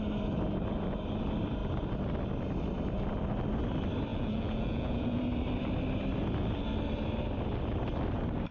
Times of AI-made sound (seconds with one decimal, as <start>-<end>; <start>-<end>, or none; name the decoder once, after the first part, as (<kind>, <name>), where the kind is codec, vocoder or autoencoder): 4.1-5.2 (vocoder, Vocos)